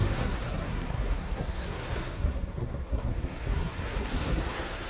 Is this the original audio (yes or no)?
no